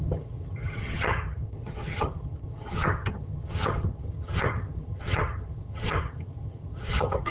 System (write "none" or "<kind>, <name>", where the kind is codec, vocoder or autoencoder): vocoder, HiFi-GAN